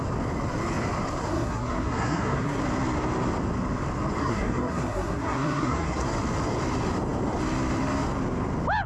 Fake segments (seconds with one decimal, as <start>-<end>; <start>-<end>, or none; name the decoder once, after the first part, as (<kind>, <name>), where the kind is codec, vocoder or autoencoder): 1.2-2.6 (codec, SNAC); 4.2-6.1